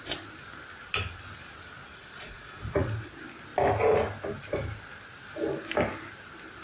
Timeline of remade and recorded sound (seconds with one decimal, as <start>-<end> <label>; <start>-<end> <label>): 0.0-1.9 recorded; 1.9-3.1 remade; 3.1-6.6 recorded